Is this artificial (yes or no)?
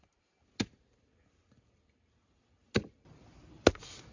no